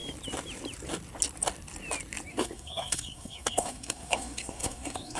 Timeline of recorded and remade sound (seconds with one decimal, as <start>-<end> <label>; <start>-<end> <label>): 0.0-2.3 recorded; 2.3-5.2 remade